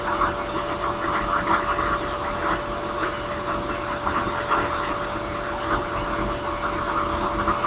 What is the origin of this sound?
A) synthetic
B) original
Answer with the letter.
B